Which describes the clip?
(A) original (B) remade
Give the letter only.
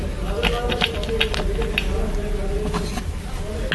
A